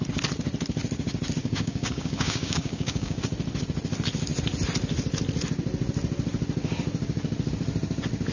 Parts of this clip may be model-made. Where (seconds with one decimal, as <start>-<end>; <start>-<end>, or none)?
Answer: 1.4-3.2